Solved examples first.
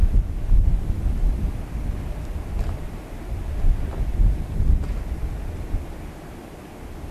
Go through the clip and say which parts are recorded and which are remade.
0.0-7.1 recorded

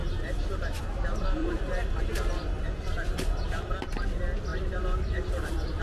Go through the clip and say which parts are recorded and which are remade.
0.0-1.4 recorded; 1.4-2.0 remade; 2.0-4.5 recorded; 4.5-5.8 remade